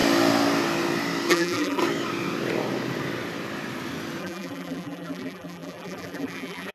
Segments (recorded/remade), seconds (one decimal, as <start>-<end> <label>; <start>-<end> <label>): 0.0-1.3 recorded; 1.3-1.8 remade; 1.8-4.2 recorded; 4.2-6.7 remade